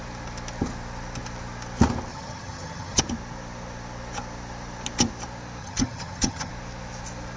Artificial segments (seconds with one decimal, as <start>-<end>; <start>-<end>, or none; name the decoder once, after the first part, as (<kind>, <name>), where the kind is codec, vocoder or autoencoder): 2.1-3.0 (vocoder, HiFi-GAN); 5.6-6.5